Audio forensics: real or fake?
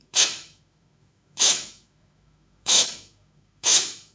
fake